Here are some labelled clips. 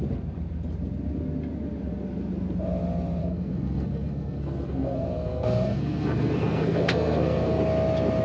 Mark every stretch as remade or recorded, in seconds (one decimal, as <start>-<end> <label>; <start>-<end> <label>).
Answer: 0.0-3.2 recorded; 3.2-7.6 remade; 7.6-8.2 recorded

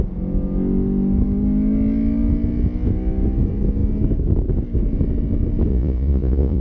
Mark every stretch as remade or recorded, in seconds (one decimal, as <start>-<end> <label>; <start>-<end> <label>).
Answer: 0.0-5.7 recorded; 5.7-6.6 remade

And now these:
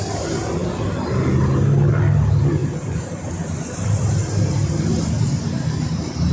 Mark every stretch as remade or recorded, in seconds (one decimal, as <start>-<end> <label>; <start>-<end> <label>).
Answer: 0.0-2.6 recorded; 2.6-3.3 remade; 3.3-6.3 recorded

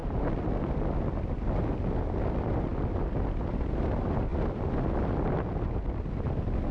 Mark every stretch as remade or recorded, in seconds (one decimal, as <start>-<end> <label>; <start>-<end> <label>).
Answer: 0.0-6.7 recorded